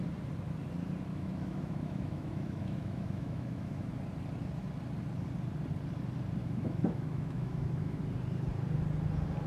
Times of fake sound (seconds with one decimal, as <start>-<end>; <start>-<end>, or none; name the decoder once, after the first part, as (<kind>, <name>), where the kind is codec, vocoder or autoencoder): 1.1-3.8 (autoencoder, DAC-VAE); 6.4-8.0